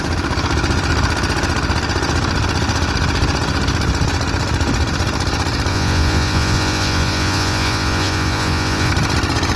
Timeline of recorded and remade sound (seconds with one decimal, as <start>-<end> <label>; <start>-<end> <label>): 0.0-5.7 recorded; 5.7-8.9 remade; 8.9-9.6 recorded

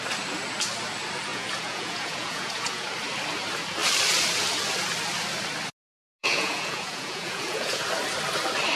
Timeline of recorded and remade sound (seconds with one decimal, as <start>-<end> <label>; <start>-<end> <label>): 0.0-1.3 recorded; 1.3-2.9 remade; 2.9-6.2 recorded; 6.2-7.9 remade; 7.9-8.8 recorded